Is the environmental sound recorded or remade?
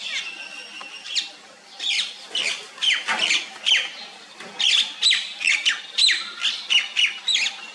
recorded